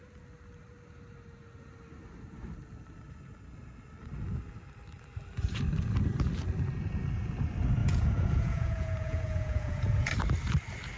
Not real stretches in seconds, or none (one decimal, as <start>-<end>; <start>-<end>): 7.8-10.1